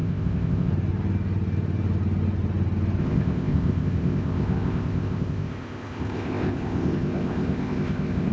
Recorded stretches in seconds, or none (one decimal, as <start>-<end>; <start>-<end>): 0.7-3.0